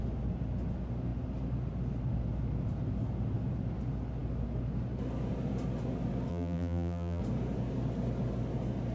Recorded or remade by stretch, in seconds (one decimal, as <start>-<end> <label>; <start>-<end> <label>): 0.0-6.3 recorded; 6.3-7.2 remade; 7.2-8.9 recorded